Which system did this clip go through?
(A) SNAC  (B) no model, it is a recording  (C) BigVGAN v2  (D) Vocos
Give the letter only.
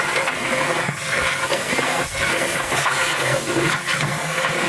A